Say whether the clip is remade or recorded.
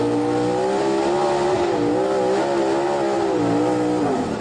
recorded